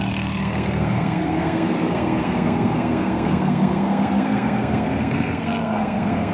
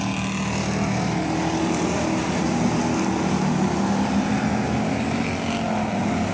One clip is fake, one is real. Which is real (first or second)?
second